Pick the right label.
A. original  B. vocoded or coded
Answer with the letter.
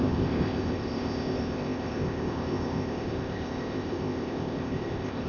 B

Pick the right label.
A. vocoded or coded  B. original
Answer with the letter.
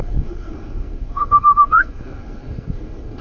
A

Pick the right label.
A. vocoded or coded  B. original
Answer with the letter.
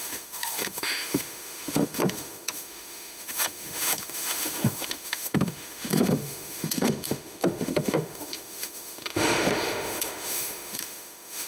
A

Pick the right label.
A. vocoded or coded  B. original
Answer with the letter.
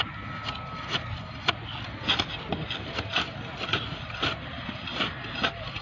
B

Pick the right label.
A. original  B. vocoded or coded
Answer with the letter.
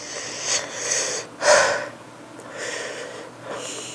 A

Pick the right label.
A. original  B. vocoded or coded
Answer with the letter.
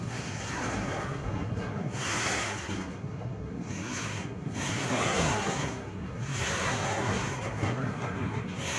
B